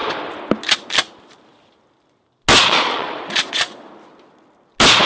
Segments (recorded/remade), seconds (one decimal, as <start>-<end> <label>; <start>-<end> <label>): 0.0-2.6 recorded; 2.6-3.9 remade; 3.9-5.1 recorded